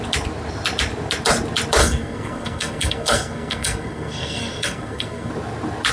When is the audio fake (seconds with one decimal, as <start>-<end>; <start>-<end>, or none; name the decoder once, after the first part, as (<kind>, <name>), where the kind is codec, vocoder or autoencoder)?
1.8-5.3 (codec, SNAC)